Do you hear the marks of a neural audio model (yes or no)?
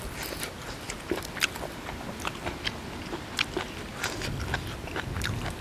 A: no